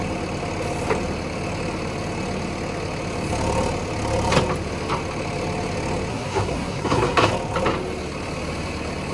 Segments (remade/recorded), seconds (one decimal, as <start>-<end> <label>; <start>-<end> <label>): 0.0-6.1 recorded; 6.1-7.3 remade; 7.3-9.1 recorded